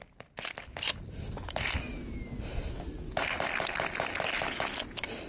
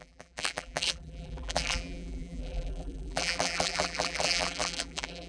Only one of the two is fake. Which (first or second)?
second